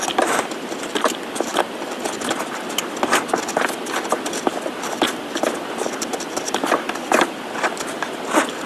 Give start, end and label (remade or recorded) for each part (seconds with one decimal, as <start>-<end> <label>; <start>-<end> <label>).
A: 0.0-8.7 recorded